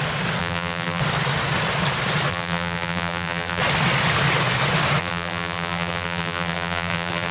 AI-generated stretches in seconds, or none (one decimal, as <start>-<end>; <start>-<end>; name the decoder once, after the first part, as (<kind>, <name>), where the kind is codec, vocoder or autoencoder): 0.4-1.0 (vocoder, BigVGAN v2); 2.3-3.6; 5.0-7.3